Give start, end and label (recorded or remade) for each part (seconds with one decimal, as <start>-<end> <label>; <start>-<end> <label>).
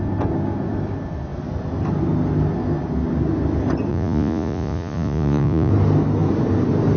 0.0-3.9 recorded; 3.9-5.7 remade; 5.7-7.0 recorded